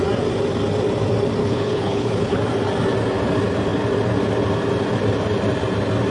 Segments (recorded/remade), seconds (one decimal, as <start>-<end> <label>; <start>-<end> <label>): 0.0-1.4 recorded; 1.4-2.4 remade; 2.4-6.1 recorded